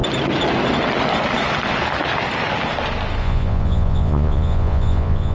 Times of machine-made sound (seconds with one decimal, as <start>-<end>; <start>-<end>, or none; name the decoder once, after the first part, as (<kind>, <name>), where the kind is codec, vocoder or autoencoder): 3.2-5.3 (vocoder, Vocos)